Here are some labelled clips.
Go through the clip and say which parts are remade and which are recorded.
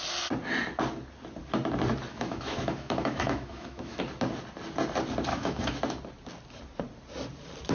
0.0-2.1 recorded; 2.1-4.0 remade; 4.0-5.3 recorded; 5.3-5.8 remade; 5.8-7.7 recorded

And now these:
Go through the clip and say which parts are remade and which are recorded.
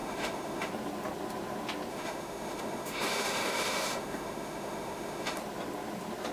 0.0-0.7 remade; 0.7-1.9 recorded; 1.9-5.4 remade; 5.4-6.3 recorded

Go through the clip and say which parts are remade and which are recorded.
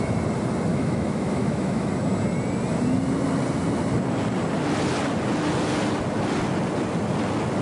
0.0-0.7 recorded; 0.7-1.9 remade; 1.9-7.6 recorded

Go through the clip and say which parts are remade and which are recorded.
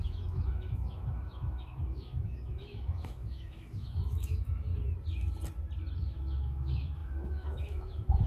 0.0-4.7 remade; 4.7-6.0 recorded; 6.0-8.3 remade